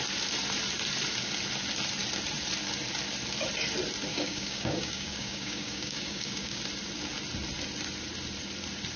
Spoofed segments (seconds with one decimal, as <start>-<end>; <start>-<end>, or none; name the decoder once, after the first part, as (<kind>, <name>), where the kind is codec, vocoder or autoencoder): 4.1-6.6 (codec, DAC)